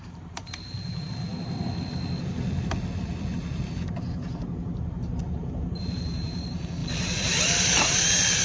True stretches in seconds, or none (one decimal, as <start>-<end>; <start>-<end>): 1.3-5.2